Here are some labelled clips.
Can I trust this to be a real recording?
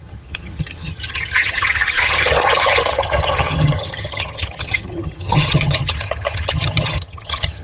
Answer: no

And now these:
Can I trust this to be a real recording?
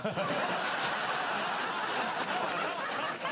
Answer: yes